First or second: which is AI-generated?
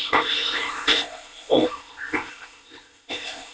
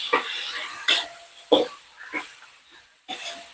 first